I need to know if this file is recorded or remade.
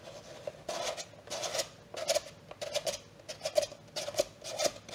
recorded